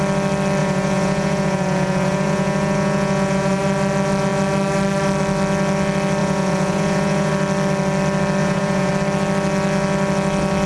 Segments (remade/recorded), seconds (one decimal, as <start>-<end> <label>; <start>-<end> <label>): 0.0-0.6 recorded; 0.6-3.6 remade; 3.6-6.2 recorded; 6.2-7.3 remade; 7.3-8.4 recorded; 8.4-8.9 remade; 8.9-10.7 recorded